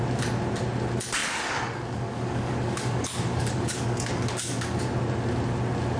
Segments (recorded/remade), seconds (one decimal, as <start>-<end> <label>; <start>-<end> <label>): 0.0-1.2 recorded; 1.2-4.8 remade; 4.8-6.0 recorded